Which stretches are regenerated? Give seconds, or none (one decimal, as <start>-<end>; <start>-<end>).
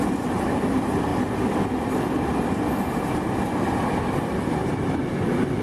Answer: none